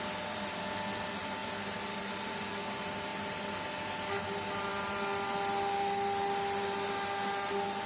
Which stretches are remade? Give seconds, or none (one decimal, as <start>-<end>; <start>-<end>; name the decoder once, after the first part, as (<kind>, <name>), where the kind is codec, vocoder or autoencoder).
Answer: none